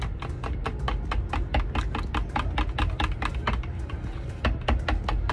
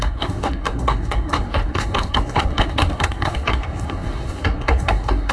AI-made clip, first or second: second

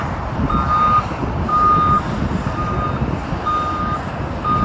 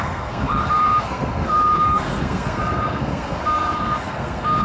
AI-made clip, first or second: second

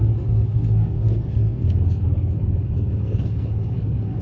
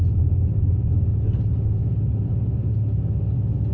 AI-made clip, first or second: first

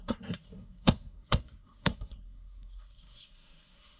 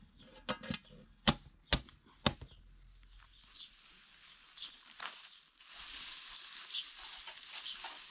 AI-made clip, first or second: first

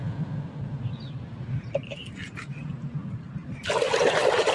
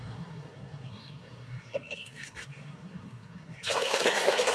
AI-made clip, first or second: second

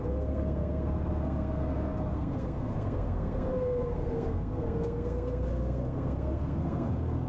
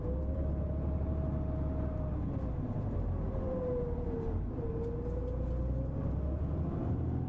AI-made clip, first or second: first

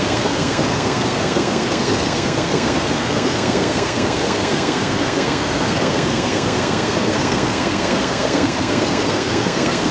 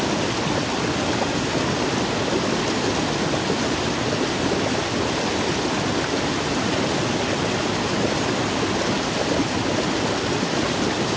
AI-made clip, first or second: first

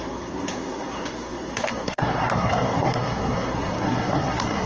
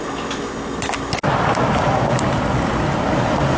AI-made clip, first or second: first